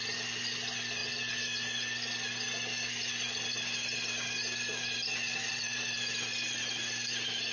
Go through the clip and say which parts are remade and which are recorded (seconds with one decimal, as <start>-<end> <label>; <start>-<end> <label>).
0.0-1.0 remade; 1.0-5.5 recorded; 5.5-7.5 remade